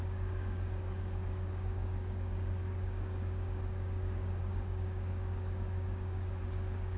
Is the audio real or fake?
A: fake